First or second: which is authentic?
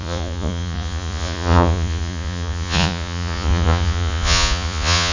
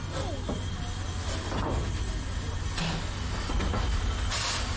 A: second